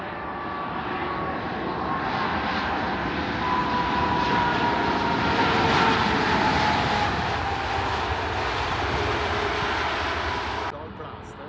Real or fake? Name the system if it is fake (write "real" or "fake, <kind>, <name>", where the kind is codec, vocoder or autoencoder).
real